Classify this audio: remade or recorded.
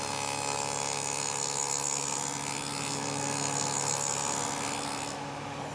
recorded